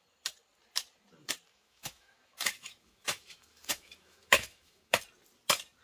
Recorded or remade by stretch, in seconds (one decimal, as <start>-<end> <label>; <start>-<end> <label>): 0.0-1.5 recorded; 1.5-5.0 remade; 5.0-5.8 recorded